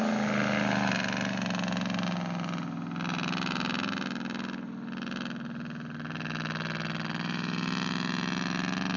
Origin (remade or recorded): recorded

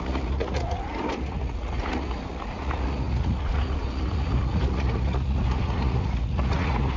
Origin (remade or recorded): remade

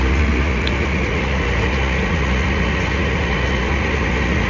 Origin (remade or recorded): remade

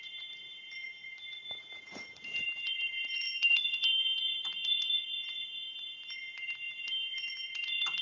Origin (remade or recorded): remade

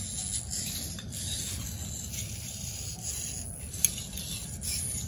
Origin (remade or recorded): recorded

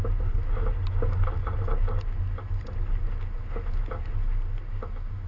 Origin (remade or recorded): recorded